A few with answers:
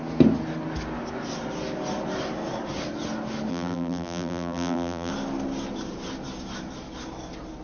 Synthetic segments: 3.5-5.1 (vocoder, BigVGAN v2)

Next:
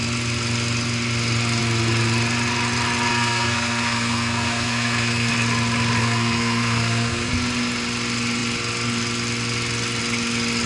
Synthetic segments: 3.1-5.3 (codec, SNAC); 6.0-7.3

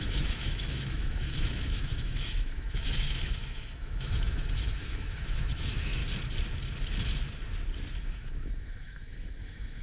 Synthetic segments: 0.0-6.0 (autoencoder, DAC-VAE); 8.0-9.8

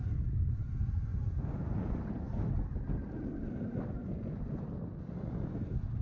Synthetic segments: none

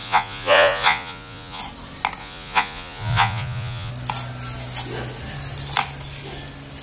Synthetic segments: 0.0-1.6 (vocoder, Vocos); 2.2-3.9

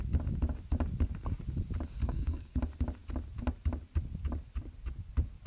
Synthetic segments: 2.0-2.6 (codec, SNAC)

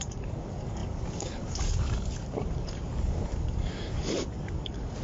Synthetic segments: 0.0-5.0 (codec, DAC)

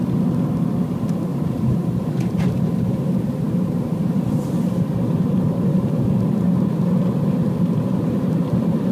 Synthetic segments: 1.3-4.1 (vocoder, BigVGAN v2)